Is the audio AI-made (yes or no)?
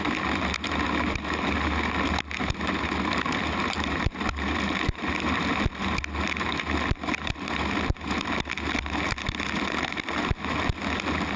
no